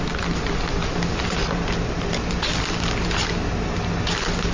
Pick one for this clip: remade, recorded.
recorded